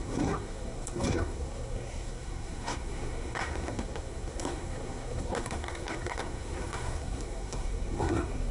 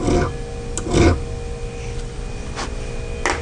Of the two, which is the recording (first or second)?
second